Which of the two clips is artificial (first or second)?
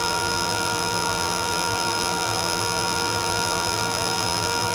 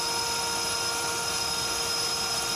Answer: first